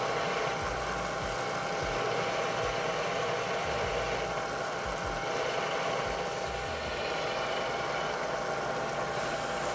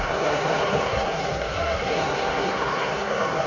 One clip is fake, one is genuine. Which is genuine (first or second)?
first